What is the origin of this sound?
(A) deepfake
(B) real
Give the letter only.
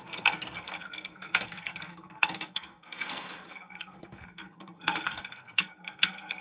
A